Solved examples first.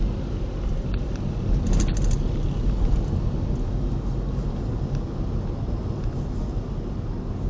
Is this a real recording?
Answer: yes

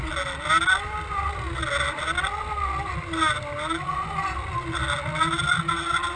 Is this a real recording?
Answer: yes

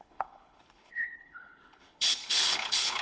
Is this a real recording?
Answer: no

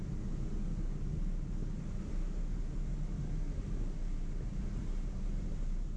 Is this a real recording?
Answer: yes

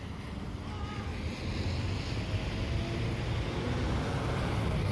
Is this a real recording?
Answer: yes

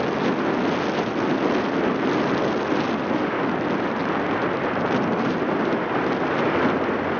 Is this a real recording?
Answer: yes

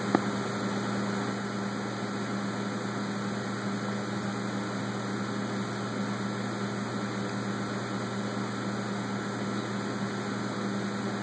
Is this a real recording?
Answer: yes